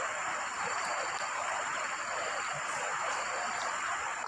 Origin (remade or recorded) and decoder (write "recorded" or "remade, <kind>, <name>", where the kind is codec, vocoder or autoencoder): remade, vocoder, BigVGAN v2